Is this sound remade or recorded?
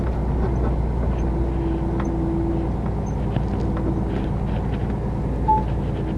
recorded